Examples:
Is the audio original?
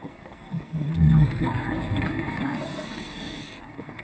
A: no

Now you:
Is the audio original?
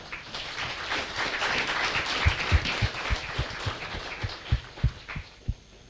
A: yes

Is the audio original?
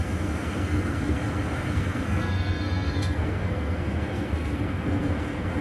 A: no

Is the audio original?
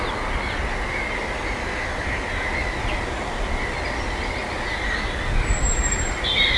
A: yes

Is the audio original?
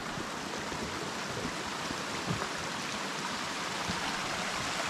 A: yes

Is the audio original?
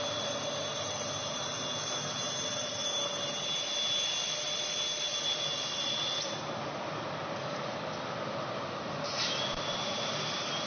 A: yes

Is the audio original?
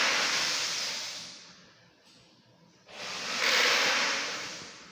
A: yes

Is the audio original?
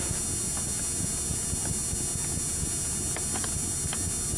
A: yes